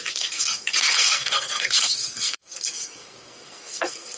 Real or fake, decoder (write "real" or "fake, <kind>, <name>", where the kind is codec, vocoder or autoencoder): fake, codec, SNAC